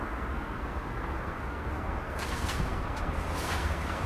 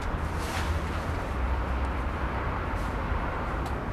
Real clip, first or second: second